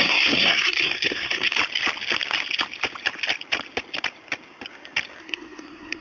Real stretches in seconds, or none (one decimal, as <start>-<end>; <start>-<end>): 1.6-5.2